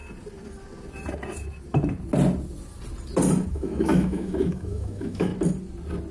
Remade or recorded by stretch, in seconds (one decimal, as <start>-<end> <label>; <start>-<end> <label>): 0.0-3.5 recorded; 3.5-5.3 remade; 5.3-6.1 recorded